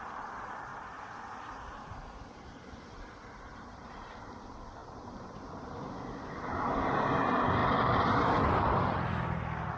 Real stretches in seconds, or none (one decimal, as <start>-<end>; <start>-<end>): 0.0-0.7; 3.9-4.8; 5.9-9.8